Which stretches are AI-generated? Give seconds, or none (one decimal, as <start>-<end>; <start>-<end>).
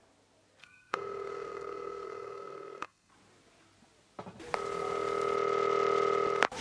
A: 0.6-3.1